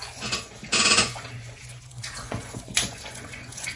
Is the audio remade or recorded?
remade